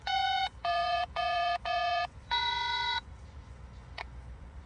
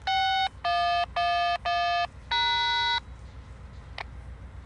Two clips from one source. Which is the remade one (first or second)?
first